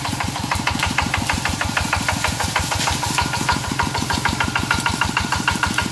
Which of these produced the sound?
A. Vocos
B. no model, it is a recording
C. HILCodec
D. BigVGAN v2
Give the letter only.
D